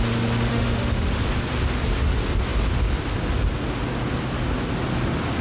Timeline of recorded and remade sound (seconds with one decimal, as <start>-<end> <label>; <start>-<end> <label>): 0.0-0.5 recorded; 0.5-1.2 remade; 1.2-5.4 recorded